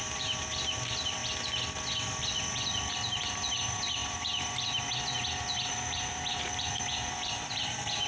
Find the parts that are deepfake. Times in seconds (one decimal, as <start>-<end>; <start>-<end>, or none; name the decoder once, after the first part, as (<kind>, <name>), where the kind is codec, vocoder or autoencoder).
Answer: 0.0-1.2 (vocoder, BigVGAN v2); 2.9-8.1